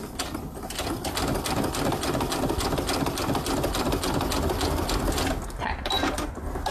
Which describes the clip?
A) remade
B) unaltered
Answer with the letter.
B